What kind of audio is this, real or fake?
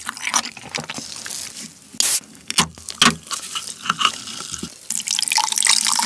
real